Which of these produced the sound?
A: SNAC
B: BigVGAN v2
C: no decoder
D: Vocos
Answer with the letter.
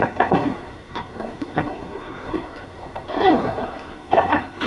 A